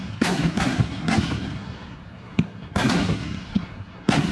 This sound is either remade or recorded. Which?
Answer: remade